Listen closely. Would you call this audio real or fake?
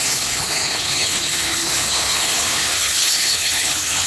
fake